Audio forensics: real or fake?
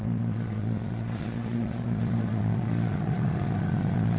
fake